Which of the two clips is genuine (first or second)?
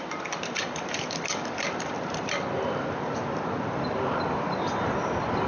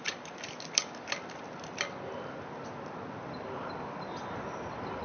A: second